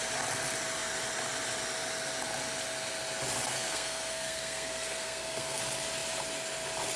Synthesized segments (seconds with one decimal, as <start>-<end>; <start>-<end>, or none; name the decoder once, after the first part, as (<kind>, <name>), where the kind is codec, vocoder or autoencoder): 3.5-5.6 (codec, SNAC)